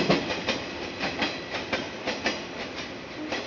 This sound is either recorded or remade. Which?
recorded